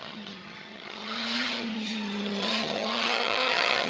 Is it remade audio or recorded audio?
remade